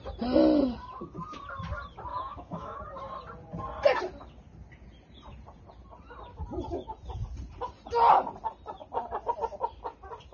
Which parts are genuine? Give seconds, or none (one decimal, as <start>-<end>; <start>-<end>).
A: 0.0-2.1; 2.8-10.3

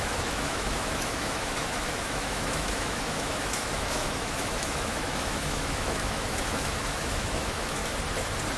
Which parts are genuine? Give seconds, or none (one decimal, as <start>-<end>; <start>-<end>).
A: 7.8-8.6

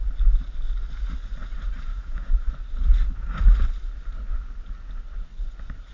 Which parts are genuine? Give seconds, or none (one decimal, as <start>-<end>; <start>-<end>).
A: 0.0-1.9; 2.5-5.9

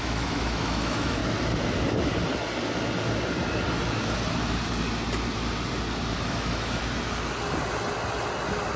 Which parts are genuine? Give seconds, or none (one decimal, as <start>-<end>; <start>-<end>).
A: 1.2-6.2; 6.8-8.8